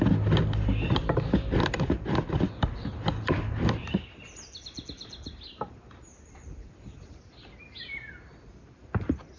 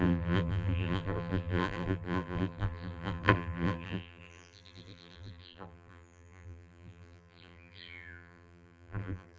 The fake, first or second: second